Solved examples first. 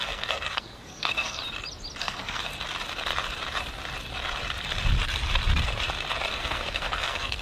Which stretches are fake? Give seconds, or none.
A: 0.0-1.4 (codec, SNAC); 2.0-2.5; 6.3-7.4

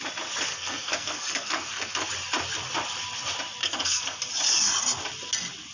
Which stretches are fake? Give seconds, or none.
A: 0.5-2.1 (codec, SNAC); 3.6-4.2

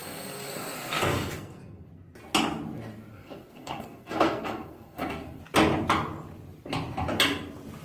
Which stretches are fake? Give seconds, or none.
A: 0.0-1.9 (codec, SNAC); 3.1-5.4

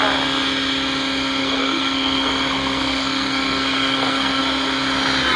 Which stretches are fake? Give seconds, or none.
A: 1.4-4.4 (codec, SNAC)

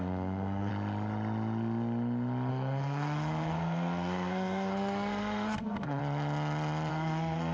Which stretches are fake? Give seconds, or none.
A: 0.0-0.7 (codec, SNAC); 2.5-6.0; 6.9-7.5